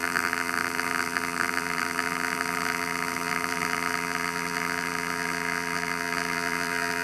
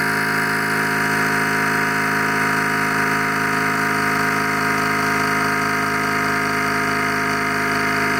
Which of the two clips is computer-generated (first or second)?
first